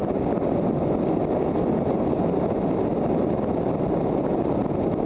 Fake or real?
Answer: real